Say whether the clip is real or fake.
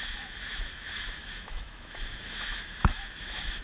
fake